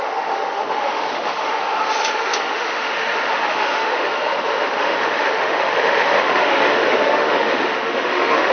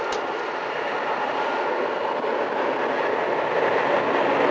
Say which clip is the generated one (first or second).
first